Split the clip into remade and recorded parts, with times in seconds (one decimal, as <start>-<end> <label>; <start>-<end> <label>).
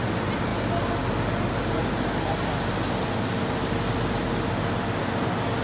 0.0-5.6 recorded